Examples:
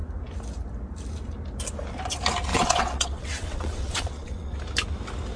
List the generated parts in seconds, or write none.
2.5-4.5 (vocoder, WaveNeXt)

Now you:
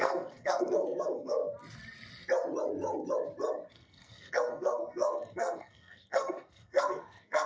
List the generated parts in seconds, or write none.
0.0-1.4 (codec, SNAC); 3.7-7.5

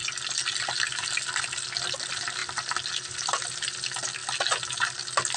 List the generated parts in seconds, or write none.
2.4-3.6 (vocoder, BigVGAN v2)